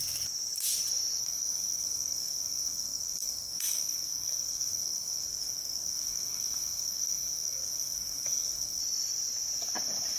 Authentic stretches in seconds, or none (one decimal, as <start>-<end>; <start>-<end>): 0.0-1.2; 8.8-10.2